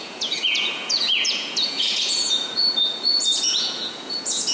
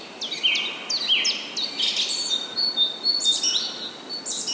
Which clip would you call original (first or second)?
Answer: second